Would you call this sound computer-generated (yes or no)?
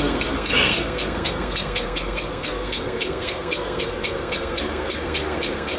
yes